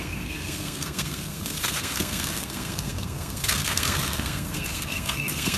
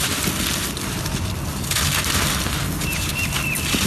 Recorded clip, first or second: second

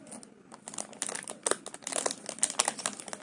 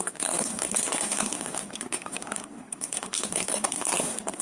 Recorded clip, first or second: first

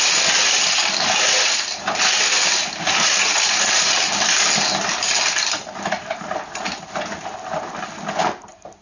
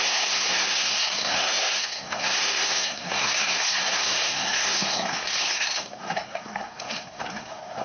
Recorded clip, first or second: first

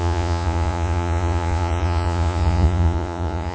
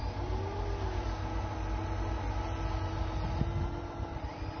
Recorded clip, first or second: second